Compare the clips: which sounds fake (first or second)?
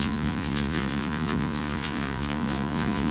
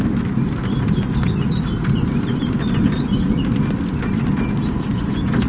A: first